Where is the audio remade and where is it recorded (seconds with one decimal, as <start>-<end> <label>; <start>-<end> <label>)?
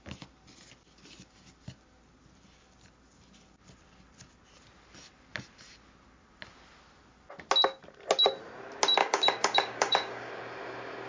0.0-9.0 recorded; 9.0-10.3 remade; 10.3-11.1 recorded